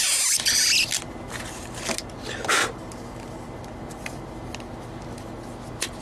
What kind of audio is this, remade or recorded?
recorded